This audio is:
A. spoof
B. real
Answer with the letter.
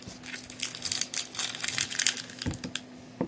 B